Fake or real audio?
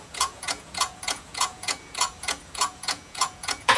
fake